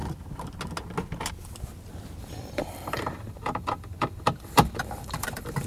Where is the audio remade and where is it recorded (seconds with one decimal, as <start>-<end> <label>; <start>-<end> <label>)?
0.0-2.2 recorded; 2.2-5.7 remade